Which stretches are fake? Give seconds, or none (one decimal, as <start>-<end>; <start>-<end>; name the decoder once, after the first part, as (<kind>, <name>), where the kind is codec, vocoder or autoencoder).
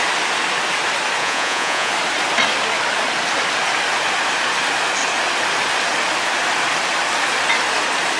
1.2-1.9 (vocoder, Vocos)